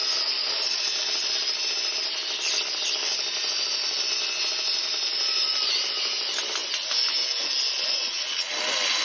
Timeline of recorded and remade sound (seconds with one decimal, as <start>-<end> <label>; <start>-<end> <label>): 0.0-9.0 recorded